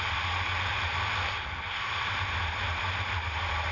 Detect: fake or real real